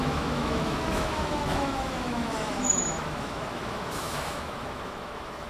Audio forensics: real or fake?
fake